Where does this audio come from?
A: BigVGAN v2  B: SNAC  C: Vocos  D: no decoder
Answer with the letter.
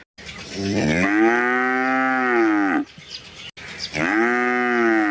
D